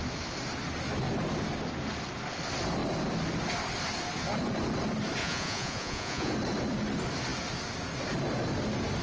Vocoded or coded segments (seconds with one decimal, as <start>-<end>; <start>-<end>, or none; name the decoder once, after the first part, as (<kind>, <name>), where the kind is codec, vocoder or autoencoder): 5.2-6.3 (vocoder, Vocos)